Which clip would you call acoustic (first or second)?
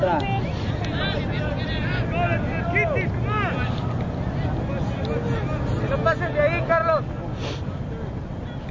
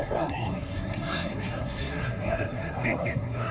first